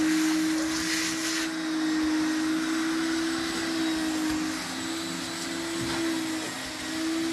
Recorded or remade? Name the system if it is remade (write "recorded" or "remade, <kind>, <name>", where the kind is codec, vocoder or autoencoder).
recorded